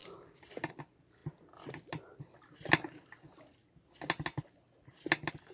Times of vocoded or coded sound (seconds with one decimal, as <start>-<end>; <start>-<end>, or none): none

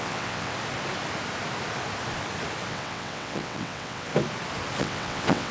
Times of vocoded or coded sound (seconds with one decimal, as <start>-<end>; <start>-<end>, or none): 0.0-0.5; 2.7-4.1; 4.8-5.5

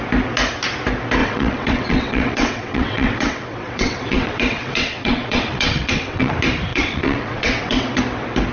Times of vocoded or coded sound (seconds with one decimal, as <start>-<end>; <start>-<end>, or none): 1.2-6.3; 6.7-8.0